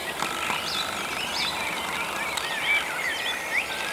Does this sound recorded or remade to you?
recorded